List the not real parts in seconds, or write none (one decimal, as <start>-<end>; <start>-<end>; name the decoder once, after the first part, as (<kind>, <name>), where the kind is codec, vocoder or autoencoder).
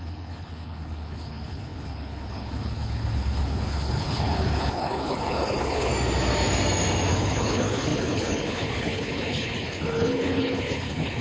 0.0-5.9 (codec, HILCodec); 7.1-11.2